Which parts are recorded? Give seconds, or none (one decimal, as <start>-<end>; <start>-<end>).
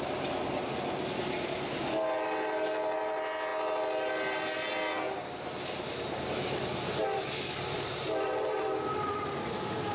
0.0-9.9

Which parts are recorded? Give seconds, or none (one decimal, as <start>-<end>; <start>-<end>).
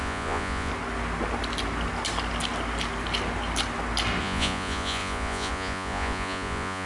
0.7-4.2